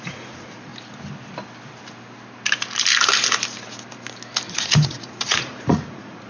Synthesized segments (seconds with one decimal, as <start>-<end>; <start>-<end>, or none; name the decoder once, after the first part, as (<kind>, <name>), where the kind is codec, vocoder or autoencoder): 0.0-0.7 (vocoder, Vocos); 4.5-6.3